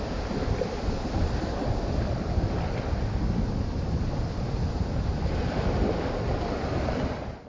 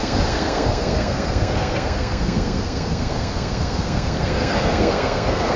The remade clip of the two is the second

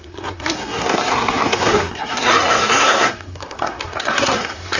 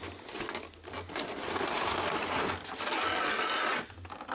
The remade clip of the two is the first